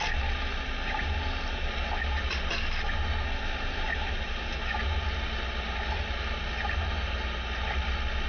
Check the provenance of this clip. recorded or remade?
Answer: recorded